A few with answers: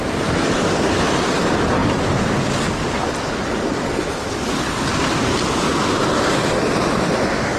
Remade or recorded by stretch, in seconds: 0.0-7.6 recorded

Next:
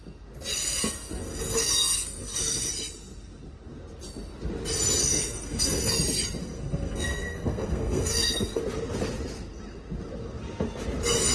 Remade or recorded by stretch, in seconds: 0.0-0.5 recorded; 0.5-2.7 remade; 2.7-5.0 recorded; 5.0-5.9 remade; 5.9-6.4 recorded; 6.4-8.6 remade; 8.6-11.3 recorded

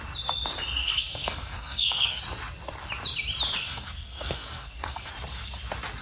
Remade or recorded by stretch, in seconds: 0.0-0.8 recorded; 0.8-2.2 remade; 2.2-3.6 recorded; 3.6-5.1 remade; 5.1-6.0 recorded

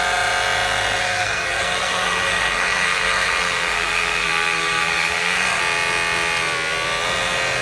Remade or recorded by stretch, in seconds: 0.0-1.0 recorded; 1.0-5.6 remade; 5.6-7.6 recorded